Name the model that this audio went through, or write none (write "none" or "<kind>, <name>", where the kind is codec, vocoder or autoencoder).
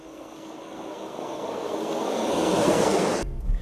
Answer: codec, SNAC